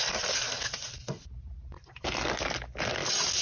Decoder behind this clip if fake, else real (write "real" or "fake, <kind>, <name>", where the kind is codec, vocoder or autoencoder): real